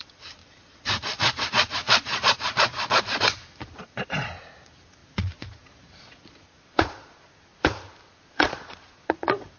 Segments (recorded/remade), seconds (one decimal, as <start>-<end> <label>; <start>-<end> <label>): 0.0-7.5 remade; 7.5-8.1 recorded; 8.1-9.6 remade